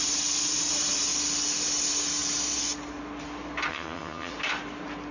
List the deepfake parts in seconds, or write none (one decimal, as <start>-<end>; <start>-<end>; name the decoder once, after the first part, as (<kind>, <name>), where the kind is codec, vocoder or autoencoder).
3.7-4.3 (vocoder, HiFi-GAN)